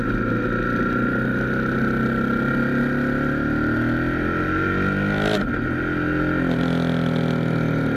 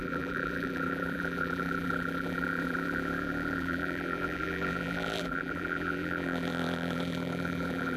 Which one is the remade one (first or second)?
second